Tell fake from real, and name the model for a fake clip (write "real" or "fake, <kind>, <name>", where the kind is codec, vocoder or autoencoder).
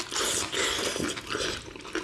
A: real